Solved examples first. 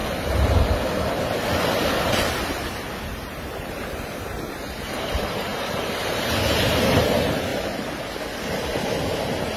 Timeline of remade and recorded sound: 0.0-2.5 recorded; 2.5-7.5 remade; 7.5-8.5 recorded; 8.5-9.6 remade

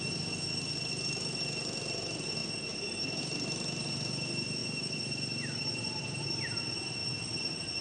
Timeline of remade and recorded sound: 0.0-4.6 recorded; 4.6-6.6 remade; 6.6-7.8 recorded

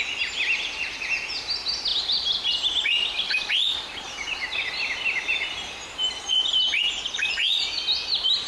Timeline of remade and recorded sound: 0.0-1.9 recorded; 1.9-6.5 remade; 6.5-8.5 recorded

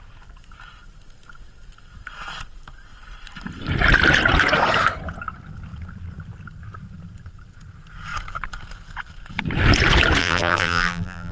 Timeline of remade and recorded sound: 0.0-10.2 recorded; 10.2-11.3 remade

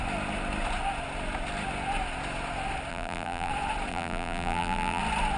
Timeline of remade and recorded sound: 0.0-2.9 recorded; 2.9-3.5 remade; 3.5-3.9 recorded; 3.9-5.0 remade; 5.0-5.4 recorded